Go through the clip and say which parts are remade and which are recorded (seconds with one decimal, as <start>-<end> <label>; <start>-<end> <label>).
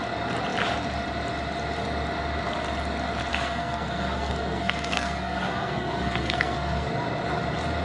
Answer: 0.0-3.3 recorded; 3.3-6.9 remade; 6.9-7.8 recorded